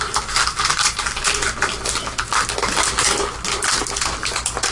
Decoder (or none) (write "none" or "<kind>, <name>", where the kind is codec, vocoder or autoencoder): none